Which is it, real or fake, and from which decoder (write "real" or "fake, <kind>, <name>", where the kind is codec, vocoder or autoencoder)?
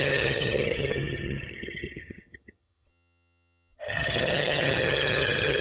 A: fake, vocoder, HiFi-GAN